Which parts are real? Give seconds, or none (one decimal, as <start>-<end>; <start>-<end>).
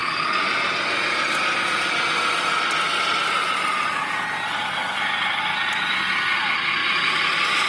0.0-7.7